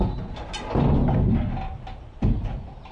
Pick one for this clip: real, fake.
real